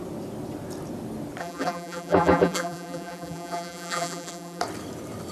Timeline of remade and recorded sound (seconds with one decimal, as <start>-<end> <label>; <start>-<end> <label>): 0.0-1.4 recorded; 1.4-4.6 remade; 4.6-5.3 recorded